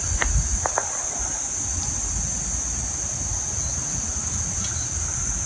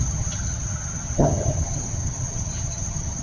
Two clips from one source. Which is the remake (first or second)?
second